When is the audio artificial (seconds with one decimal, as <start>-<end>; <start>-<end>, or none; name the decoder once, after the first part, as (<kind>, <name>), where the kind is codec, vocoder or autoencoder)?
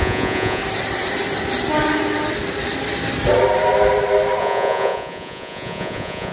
0.0-0.6 (vocoder, Vocos); 4.4-6.3